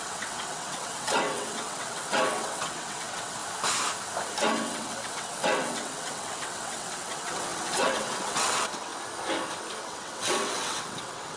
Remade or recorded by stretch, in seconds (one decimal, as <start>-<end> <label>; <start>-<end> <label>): 0.0-3.4 remade; 3.4-4.5 recorded; 4.5-8.9 remade; 8.9-9.8 recorded; 9.8-11.4 remade